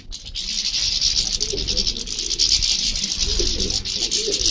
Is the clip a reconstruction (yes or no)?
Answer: no